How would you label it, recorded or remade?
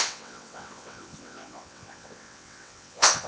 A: remade